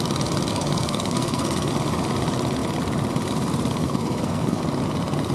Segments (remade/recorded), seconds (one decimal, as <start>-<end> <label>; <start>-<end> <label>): 0.0-0.5 recorded; 0.5-1.7 remade; 1.7-3.8 recorded; 3.8-4.6 remade; 4.6-5.3 recorded